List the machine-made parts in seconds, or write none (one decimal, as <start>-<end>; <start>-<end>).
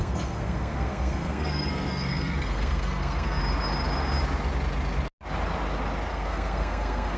0.0-3.4; 6.1-7.2